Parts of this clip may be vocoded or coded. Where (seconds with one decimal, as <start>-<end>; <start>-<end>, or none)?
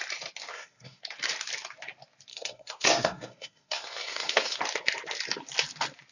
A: 0.5-1.0; 2.3-4.6